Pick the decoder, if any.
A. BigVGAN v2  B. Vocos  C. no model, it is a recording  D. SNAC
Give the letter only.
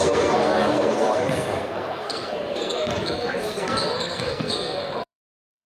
D